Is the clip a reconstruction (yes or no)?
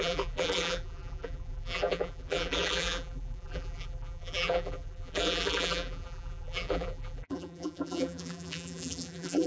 yes